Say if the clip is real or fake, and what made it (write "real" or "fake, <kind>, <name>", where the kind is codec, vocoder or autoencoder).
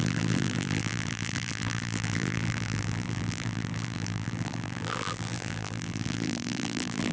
fake, vocoder, BigVGAN v2